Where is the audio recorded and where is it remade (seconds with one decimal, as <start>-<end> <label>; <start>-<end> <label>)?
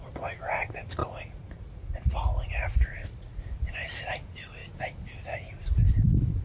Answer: 0.0-1.0 recorded; 1.0-3.4 remade; 3.4-6.4 recorded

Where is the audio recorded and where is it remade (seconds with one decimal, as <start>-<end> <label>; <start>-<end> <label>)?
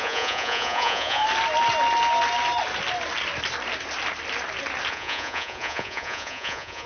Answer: 0.0-1.2 remade; 1.2-4.9 recorded; 4.9-6.9 remade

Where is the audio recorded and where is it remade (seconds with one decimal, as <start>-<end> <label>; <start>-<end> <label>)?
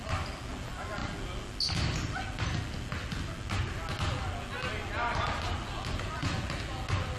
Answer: 0.0-7.2 recorded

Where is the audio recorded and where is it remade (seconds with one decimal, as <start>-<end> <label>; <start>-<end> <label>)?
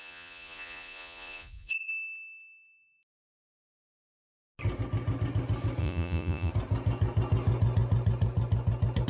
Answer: 0.0-1.9 remade; 1.9-5.8 recorded; 5.8-6.5 remade; 6.5-9.1 recorded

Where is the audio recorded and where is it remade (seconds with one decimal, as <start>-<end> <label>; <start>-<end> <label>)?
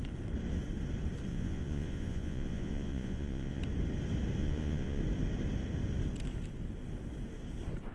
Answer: 0.0-1.3 recorded; 1.3-3.6 remade; 3.6-4.4 recorded; 4.4-5.0 remade; 5.0-7.9 recorded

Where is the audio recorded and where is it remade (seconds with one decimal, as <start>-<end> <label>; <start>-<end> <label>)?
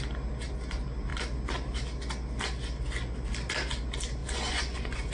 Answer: 0.0-4.2 recorded; 4.2-5.1 remade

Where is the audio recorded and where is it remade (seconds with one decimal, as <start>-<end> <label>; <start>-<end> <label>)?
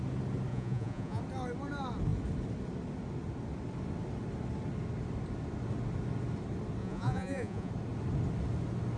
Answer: 0.0-0.5 recorded; 0.5-1.2 remade; 1.2-6.8 recorded; 6.8-7.7 remade; 7.7-9.0 recorded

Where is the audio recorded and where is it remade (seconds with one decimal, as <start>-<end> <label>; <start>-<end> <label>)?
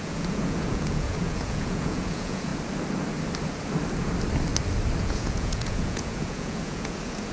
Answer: 0.0-2.5 remade; 2.5-5.0 recorded; 5.0-7.3 remade